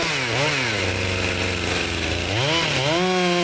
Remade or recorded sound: recorded